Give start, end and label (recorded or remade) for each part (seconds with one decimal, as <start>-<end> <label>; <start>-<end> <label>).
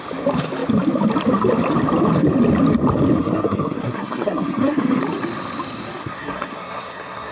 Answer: 0.0-3.2 recorded; 3.2-5.0 remade; 5.0-6.0 recorded; 6.0-7.3 remade